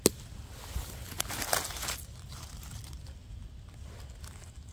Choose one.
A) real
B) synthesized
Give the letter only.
A